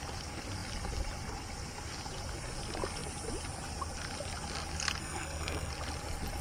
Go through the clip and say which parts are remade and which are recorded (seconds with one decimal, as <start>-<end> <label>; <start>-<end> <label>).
0.0-5.0 recorded; 5.0-5.7 remade; 5.7-6.4 recorded